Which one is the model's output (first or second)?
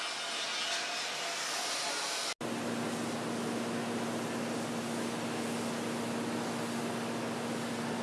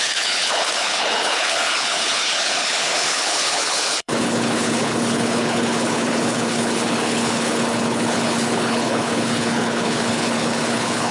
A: second